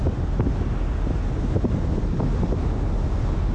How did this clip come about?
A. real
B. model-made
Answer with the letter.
A